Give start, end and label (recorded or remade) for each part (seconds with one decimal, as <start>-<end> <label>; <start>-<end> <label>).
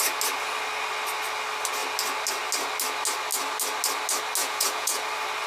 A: 0.0-4.4 recorded; 4.4-5.0 remade; 5.0-5.5 recorded